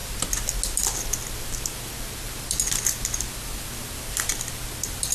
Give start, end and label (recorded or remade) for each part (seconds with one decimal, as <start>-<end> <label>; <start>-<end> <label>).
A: 0.0-5.1 recorded